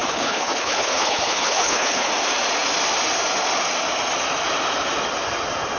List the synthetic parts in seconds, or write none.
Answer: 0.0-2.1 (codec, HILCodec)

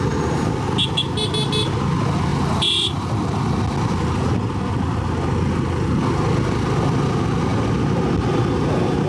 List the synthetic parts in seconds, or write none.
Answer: none